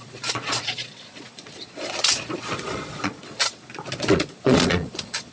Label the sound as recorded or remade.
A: remade